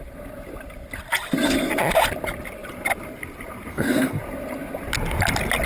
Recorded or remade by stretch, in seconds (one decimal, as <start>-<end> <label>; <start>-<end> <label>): 0.0-3.7 recorded; 3.7-4.2 remade; 4.2-5.7 recorded